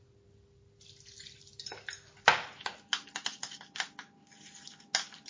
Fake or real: real